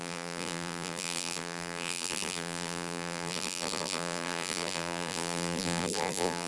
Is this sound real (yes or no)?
no